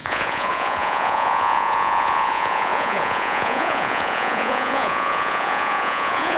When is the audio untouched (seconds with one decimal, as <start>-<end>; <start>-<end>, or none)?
none